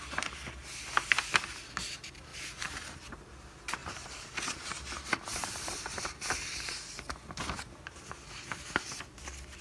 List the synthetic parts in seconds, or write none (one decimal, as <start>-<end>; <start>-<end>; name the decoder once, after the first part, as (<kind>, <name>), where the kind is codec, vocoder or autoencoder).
2.3-3.0 (vocoder, BigVGAN v2); 3.8-6.7